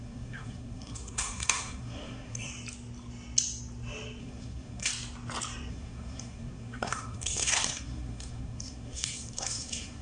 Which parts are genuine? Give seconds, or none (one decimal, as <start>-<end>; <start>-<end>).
2.5-4.2; 4.9-5.7